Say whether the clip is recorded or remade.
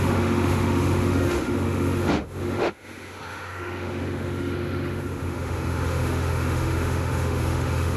remade